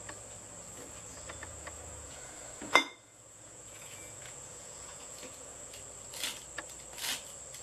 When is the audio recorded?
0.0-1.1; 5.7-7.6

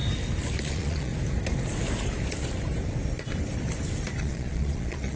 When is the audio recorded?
0.0-0.6; 1.1-4.2

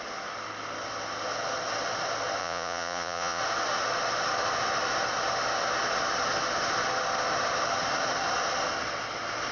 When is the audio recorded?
0.0-2.4; 3.4-9.5

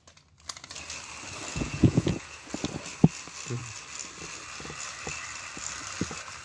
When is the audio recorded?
0.0-1.5; 2.5-6.4

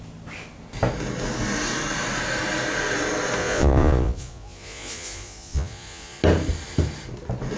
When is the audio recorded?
0.0-3.4; 6.2-7.6

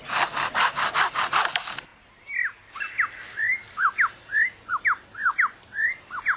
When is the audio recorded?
0.0-6.4